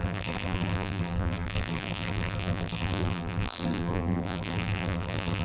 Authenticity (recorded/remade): remade